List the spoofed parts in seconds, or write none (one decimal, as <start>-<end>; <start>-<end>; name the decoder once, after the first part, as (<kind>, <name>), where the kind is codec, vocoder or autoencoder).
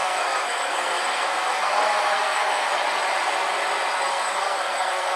0.0-2.8 (codec, SNAC); 4.1-5.2